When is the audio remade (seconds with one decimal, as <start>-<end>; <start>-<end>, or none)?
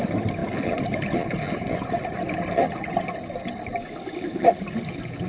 none